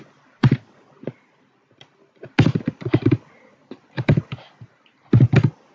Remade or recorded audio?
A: recorded